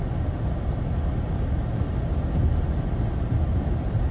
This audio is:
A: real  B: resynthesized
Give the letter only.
A